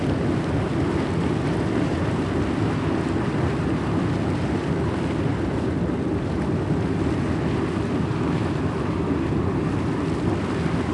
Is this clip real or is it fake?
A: real